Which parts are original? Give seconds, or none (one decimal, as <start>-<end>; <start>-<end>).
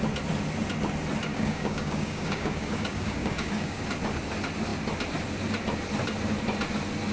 0.0-1.3; 3.8-7.1